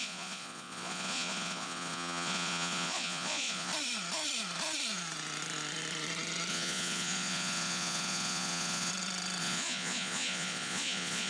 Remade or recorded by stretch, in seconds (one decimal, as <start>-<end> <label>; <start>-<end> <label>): 0.0-3.7 remade; 3.7-6.5 recorded; 6.5-8.9 remade; 8.9-9.4 recorded; 9.4-11.3 remade